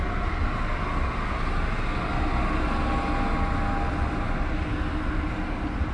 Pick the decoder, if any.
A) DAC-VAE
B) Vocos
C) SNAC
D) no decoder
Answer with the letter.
D